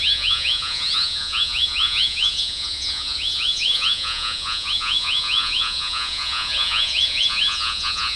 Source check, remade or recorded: remade